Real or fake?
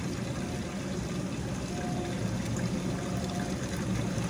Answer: real